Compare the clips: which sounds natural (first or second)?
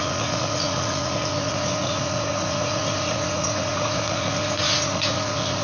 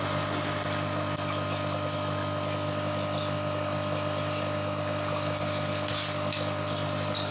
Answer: second